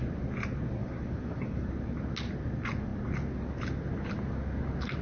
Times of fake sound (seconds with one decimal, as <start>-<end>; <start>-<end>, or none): 0.8-1.7